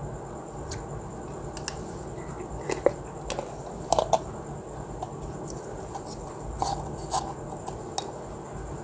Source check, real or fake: real